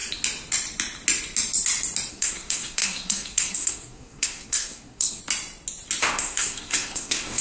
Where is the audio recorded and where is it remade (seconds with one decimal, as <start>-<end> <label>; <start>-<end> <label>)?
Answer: 0.0-2.1 recorded; 2.1-5.2 remade; 5.2-6.0 recorded; 6.0-7.4 remade